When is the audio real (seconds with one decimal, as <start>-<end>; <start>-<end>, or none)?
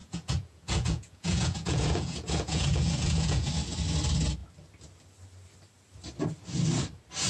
3.5-7.3